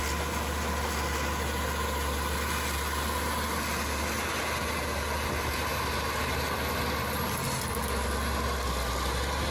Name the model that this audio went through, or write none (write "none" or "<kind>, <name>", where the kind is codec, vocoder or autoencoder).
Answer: none